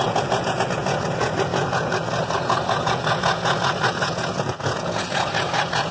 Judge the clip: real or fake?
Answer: fake